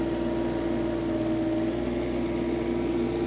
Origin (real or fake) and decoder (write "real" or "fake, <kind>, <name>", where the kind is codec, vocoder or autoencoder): real